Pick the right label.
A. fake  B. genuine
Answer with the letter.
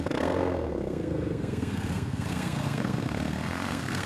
A